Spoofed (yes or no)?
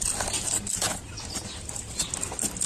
no